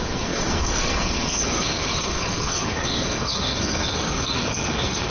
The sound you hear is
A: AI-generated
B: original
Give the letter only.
A